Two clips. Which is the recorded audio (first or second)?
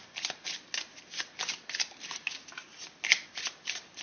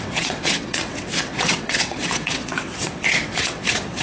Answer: first